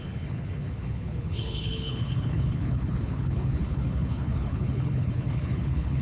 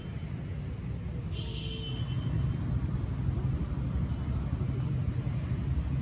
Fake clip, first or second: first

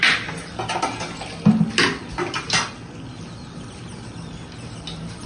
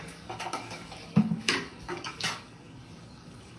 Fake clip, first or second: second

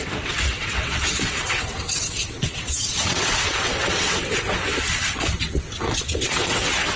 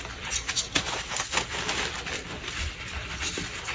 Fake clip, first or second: first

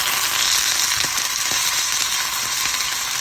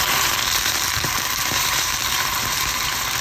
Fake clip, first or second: second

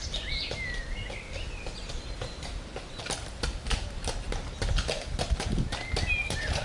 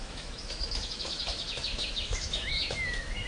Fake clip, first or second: second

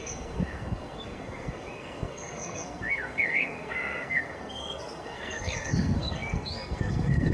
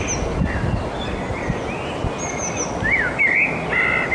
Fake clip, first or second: first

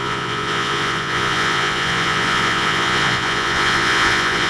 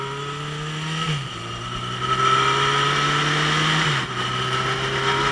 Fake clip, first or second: first